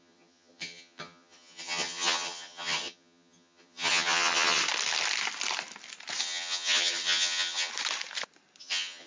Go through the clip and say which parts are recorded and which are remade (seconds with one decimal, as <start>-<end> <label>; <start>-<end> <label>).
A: 0.0-4.6 remade; 4.6-6.2 recorded; 6.2-7.7 remade; 7.7-8.6 recorded; 8.6-9.1 remade